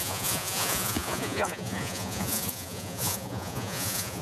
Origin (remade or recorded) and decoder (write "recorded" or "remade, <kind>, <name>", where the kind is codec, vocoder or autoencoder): remade, vocoder, Vocos